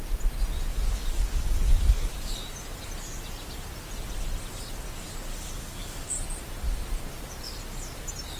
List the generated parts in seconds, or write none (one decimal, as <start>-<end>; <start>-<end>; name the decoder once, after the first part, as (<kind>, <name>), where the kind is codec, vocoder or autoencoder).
0.7-2.3 (codec, DAC); 5.3-6.1

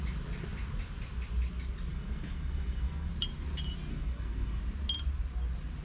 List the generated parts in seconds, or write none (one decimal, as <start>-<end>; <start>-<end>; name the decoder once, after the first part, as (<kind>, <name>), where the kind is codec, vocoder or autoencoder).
1.9-3.1 (codec, SNAC); 3.9-4.6